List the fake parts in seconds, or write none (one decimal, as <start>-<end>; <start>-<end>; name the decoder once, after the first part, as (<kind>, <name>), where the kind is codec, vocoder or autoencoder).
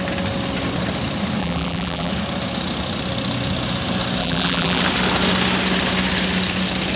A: 1.4-2.1 (vocoder, BigVGAN v2); 4.2-4.8